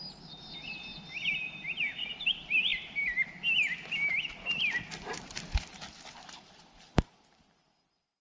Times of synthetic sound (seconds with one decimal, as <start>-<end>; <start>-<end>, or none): 0.0-0.9; 1.5-2.7; 6.2-8.2